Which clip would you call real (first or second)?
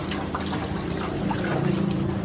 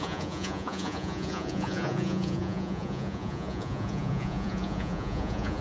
first